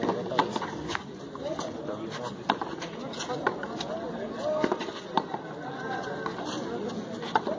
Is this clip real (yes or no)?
yes